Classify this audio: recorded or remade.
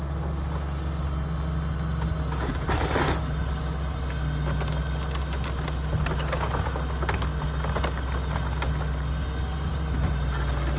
recorded